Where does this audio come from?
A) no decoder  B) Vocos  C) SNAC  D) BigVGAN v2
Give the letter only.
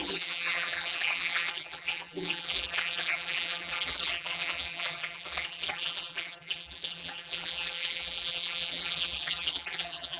D